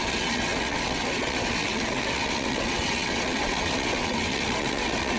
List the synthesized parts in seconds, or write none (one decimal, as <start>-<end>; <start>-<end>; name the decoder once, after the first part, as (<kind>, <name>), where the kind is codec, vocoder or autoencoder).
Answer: 0.0-5.2 (vocoder, WaveNeXt)